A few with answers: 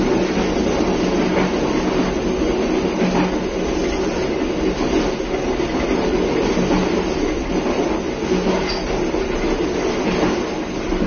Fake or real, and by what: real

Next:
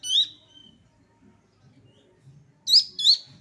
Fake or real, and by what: real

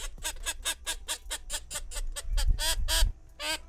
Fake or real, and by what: real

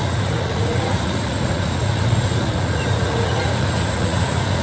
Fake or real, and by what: fake, vocoder, Vocos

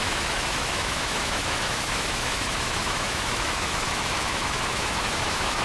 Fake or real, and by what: fake, autoencoder, DAC-VAE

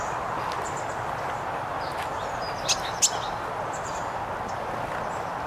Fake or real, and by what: real